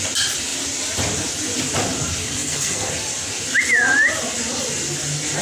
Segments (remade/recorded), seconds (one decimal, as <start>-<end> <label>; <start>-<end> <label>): 0.0-2.2 recorded; 2.2-2.9 remade; 2.9-5.4 recorded

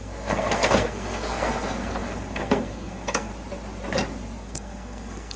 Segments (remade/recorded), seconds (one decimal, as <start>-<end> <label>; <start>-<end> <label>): 0.0-3.3 remade; 3.3-4.4 recorded; 4.4-5.4 remade